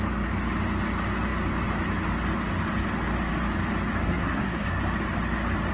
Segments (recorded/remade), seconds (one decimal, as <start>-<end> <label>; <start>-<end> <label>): 0.0-4.0 recorded; 4.0-4.8 remade; 4.8-5.7 recorded